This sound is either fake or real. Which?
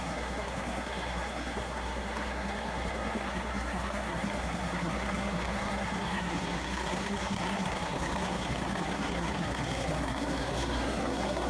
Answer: fake